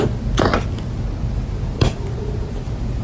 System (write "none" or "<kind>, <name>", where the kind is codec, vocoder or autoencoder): none